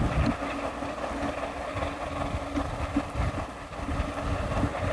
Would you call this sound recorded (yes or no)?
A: yes